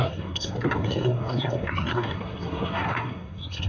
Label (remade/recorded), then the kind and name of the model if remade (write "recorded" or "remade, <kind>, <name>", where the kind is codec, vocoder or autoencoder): remade, codec, SNAC